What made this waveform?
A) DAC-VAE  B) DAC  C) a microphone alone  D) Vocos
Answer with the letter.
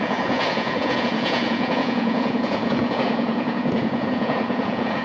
D